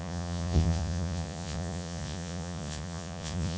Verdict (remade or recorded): remade